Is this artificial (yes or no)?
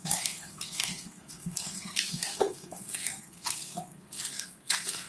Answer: yes